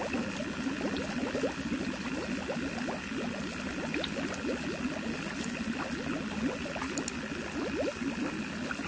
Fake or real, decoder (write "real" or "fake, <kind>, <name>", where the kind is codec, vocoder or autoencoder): real